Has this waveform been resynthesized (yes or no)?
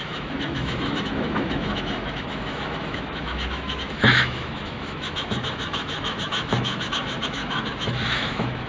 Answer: yes